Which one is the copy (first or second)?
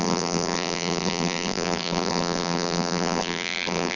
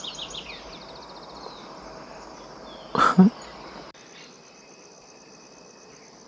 first